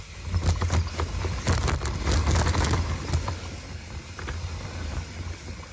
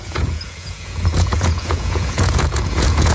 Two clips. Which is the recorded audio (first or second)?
first